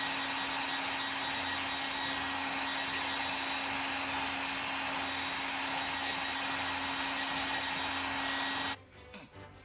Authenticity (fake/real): real